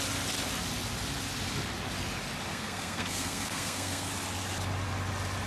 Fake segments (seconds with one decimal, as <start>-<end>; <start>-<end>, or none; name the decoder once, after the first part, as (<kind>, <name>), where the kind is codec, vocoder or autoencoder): 2.5-4.1 (codec, SNAC)